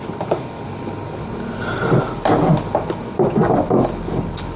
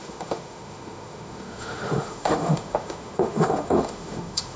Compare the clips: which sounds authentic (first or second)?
first